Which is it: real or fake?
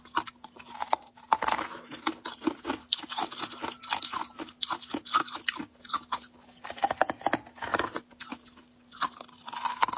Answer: real